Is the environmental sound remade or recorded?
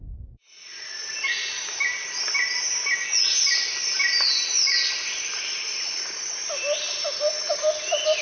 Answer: recorded